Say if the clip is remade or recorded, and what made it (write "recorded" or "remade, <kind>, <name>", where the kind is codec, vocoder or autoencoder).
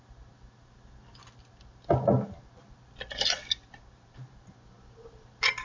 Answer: recorded